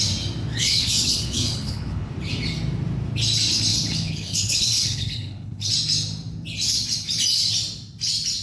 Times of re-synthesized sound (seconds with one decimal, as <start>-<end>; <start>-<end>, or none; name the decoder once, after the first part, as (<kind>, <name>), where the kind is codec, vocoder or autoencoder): 0.5-2.1 (codec, HILCodec); 3.7-5.7